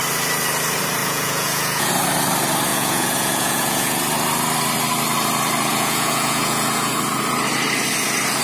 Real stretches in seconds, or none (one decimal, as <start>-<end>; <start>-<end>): 0.0-1.0; 1.9-2.7; 4.0-5.7; 6.9-8.4